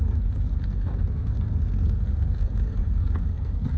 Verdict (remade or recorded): remade